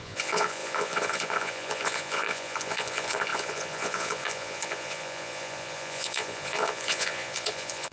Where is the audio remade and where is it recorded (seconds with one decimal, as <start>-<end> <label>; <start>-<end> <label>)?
0.0-7.9 remade

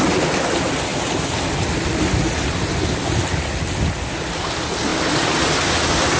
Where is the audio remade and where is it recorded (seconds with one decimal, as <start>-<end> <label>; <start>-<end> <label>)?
0.0-0.9 recorded; 0.9-2.7 remade; 2.7-6.2 recorded

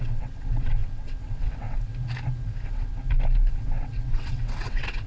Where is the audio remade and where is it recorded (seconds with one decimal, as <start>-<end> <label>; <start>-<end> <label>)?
0.0-1.9 remade; 1.9-2.4 recorded; 2.4-2.9 remade; 2.9-3.5 recorded; 3.5-5.1 remade